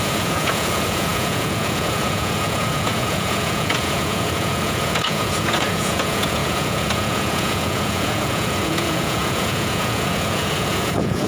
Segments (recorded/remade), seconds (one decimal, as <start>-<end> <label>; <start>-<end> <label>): 0.0-11.3 remade